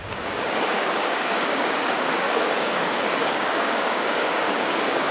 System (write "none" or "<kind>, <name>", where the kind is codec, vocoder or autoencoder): codec, DAC